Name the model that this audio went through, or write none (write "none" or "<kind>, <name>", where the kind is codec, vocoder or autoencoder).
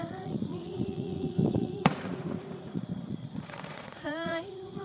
vocoder, Vocos